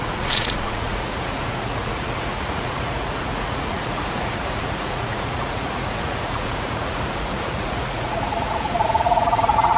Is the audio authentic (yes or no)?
no